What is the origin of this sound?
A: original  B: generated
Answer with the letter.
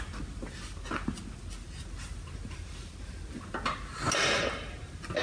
A